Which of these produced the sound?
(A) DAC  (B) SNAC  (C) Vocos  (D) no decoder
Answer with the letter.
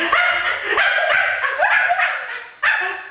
D